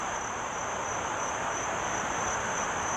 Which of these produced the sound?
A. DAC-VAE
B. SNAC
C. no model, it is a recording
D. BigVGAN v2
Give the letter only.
D